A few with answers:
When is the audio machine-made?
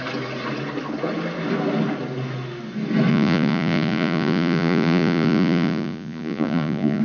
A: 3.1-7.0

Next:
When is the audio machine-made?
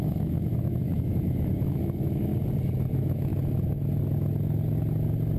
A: 0.0-2.3; 2.9-3.3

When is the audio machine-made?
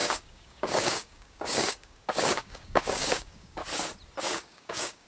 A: 0.0-3.6; 4.2-5.1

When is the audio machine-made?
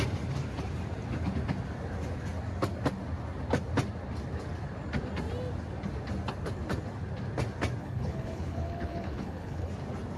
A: 7.8-9.7